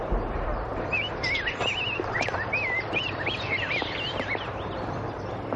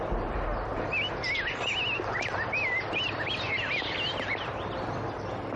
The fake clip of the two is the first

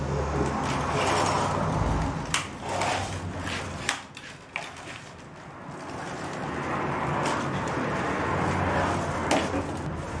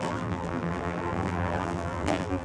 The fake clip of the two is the second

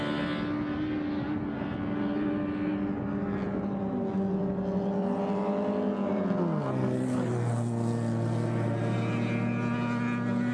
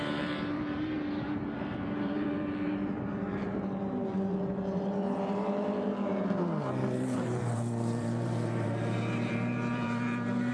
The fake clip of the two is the second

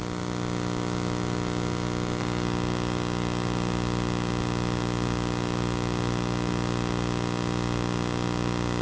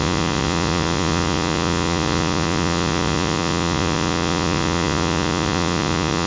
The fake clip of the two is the second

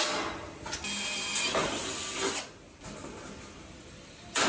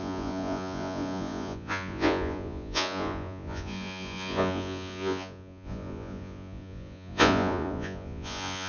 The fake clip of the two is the second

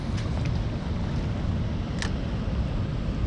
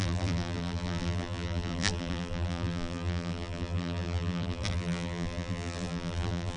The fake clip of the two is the second